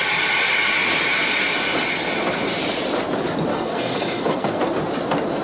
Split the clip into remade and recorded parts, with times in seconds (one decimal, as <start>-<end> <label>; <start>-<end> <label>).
0.0-3.5 recorded; 3.5-4.6 remade; 4.6-5.4 recorded